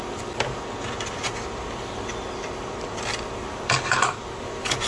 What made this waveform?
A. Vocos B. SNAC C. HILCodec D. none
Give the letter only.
D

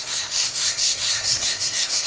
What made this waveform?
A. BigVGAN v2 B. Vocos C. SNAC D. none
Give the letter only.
C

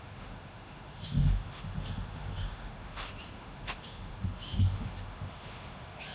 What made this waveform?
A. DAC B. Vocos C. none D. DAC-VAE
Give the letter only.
D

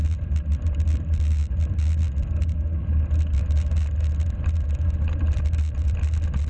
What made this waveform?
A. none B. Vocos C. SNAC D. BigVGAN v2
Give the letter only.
A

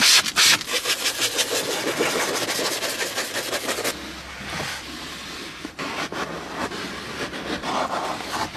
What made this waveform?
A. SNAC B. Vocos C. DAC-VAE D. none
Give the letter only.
D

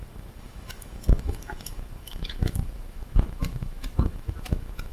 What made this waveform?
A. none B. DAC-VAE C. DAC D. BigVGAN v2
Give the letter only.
B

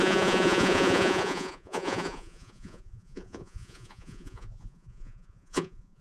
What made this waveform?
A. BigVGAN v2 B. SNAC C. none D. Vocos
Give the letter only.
D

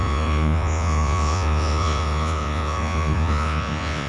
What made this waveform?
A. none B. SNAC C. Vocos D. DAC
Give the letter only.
C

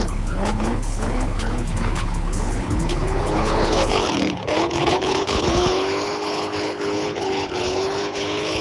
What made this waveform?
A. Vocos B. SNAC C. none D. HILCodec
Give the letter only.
D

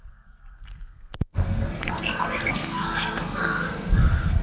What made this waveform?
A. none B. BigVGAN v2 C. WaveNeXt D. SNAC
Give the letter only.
D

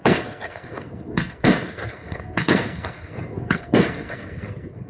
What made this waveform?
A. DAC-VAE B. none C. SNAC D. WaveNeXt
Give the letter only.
C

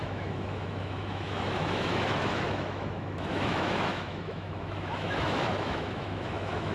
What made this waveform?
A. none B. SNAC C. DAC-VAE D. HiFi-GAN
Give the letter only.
C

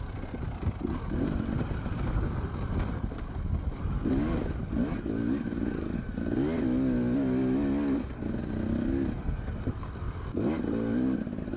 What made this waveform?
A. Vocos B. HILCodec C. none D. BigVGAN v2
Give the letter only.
C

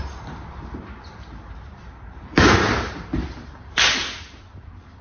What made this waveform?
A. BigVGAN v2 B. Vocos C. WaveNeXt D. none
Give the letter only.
A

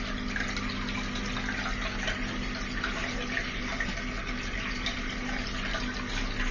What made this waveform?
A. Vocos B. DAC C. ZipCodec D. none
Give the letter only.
D